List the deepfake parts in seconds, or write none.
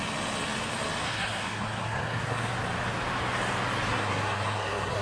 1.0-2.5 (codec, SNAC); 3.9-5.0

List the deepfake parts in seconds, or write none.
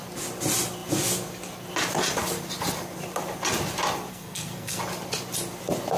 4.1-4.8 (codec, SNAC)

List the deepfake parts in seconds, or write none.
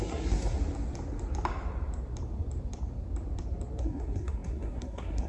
0.0-0.6 (codec, SNAC); 3.8-5.3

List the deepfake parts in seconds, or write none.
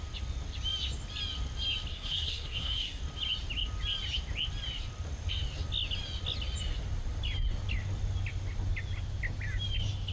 1.9-3.0 (codec, SNAC)